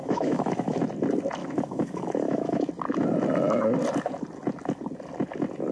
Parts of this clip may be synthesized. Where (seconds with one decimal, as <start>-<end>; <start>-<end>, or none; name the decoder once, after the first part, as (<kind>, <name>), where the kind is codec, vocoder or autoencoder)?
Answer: 0.0-0.8 (autoencoder, DAC-VAE); 1.4-2.7